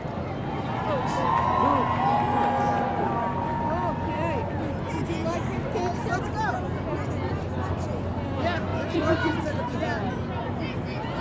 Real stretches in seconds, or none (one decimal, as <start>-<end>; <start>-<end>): 0.0-8.7; 9.7-11.2